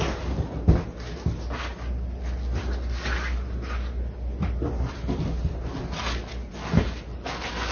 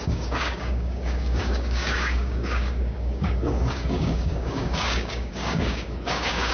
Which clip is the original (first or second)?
first